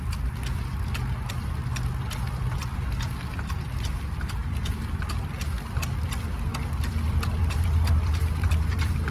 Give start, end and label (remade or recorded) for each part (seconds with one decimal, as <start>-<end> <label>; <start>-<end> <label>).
0.0-6.5 recorded; 6.5-8.1 remade; 8.1-9.1 recorded